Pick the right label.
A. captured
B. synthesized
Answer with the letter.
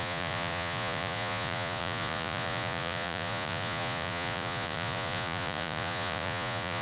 B